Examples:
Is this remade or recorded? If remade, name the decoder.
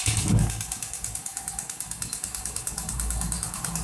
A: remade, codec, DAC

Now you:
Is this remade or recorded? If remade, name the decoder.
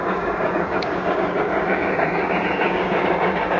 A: remade, codec, DAC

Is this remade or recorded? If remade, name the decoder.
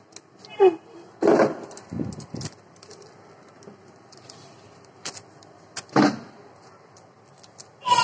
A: recorded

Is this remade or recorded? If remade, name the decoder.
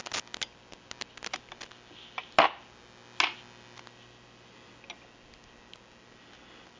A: recorded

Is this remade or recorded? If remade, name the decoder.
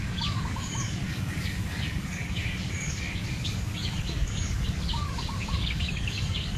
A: remade, codec, DAC